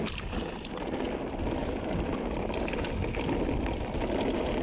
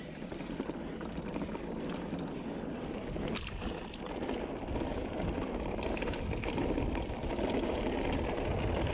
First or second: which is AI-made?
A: second